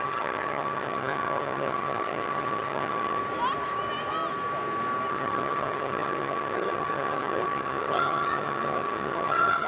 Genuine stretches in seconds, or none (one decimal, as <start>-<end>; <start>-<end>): 3.2-5.1